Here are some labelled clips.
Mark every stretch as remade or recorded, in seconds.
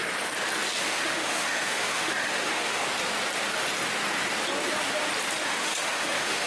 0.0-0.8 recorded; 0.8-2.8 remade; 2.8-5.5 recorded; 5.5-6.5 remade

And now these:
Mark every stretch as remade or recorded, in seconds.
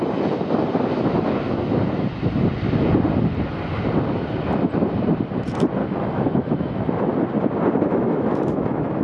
0.0-5.8 recorded; 5.8-6.8 remade; 6.8-7.9 recorded; 7.9-9.0 remade